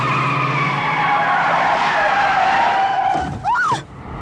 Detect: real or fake real